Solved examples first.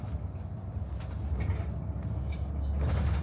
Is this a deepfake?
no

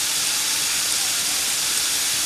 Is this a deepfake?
no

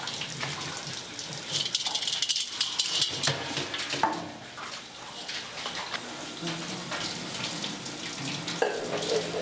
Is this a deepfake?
no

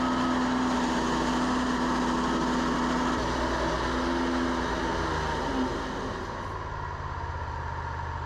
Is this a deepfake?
no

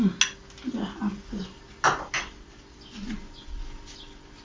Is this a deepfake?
no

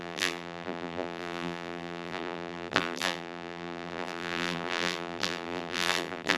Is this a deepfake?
yes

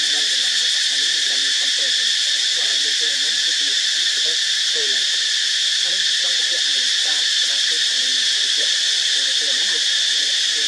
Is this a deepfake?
yes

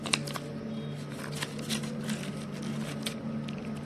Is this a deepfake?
no